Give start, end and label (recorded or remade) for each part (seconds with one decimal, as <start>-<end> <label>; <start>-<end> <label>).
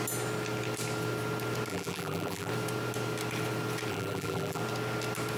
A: 0.0-1.7 recorded; 1.7-2.5 remade; 2.5-3.9 recorded; 3.9-4.6 remade; 4.6-5.4 recorded